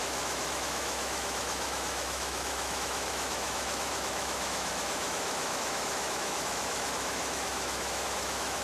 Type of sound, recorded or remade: remade